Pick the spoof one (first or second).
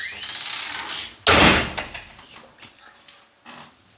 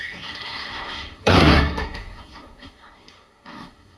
second